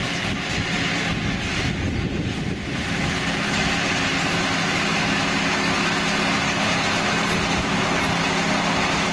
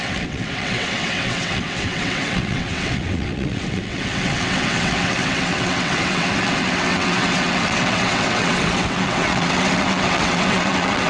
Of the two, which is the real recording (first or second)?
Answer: first